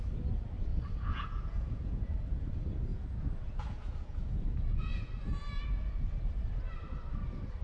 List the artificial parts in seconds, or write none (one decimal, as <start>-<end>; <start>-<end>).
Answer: 0.7-2.5; 2.9-5.1